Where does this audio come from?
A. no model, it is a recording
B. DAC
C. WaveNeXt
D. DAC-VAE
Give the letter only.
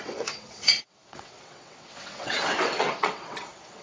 C